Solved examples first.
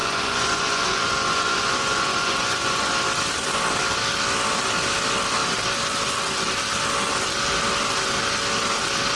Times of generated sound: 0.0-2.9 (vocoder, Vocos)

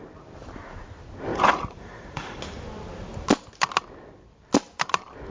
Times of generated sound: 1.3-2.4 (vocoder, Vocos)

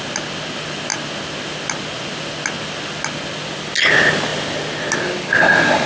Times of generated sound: none

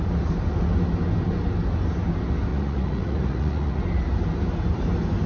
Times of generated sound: 2.5-3.8 (vocoder, Vocos)

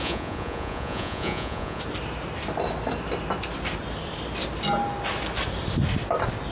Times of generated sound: 0.0-1.8 (vocoder, Vocos)